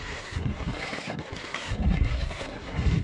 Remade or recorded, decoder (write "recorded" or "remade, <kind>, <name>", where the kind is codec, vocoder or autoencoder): remade, codec, SNAC